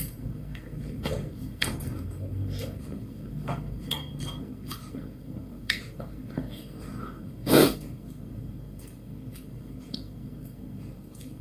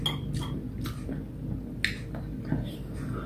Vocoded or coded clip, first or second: first